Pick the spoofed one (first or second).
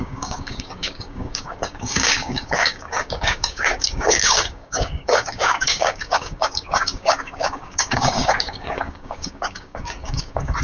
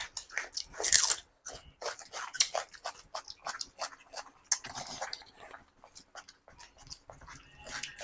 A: first